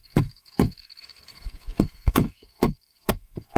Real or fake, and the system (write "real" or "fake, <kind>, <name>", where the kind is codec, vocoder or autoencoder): fake, codec, SNAC